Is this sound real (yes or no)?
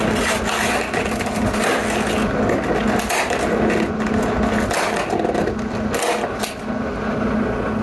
yes